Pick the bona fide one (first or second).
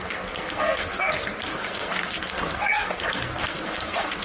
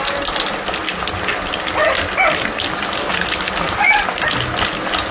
second